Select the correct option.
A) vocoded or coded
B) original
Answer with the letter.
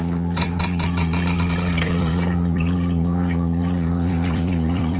A